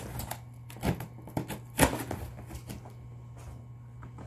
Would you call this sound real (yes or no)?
yes